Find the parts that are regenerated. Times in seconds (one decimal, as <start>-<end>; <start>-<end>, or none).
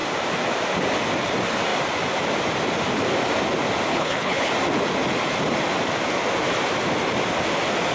3.9-4.5